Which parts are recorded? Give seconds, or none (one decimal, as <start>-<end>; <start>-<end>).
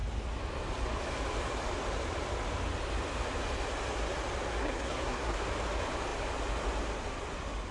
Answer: 0.0-4.6; 5.4-7.7